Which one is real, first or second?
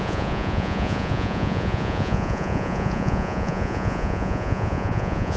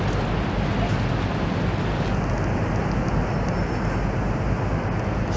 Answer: second